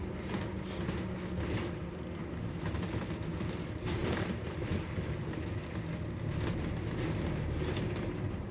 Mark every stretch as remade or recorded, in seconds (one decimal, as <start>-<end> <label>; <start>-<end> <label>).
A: 0.0-2.2 recorded; 2.2-3.5 remade; 3.5-4.0 recorded; 4.0-5.7 remade; 5.7-8.5 recorded